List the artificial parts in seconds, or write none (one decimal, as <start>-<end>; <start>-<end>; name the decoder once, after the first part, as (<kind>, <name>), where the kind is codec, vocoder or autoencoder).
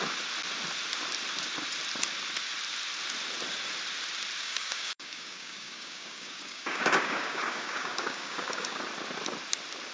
4.4-8.8 (codec, DAC)